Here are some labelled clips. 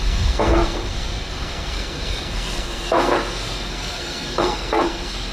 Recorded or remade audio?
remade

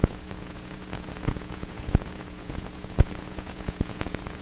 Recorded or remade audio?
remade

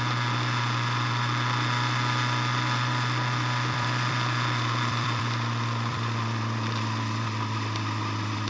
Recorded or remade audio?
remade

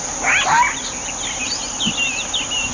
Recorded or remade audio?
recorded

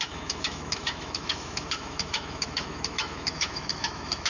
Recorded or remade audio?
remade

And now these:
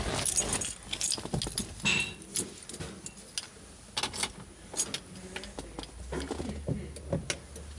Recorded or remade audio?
recorded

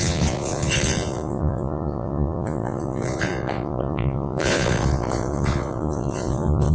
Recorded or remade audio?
remade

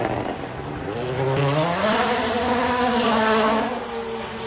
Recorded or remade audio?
recorded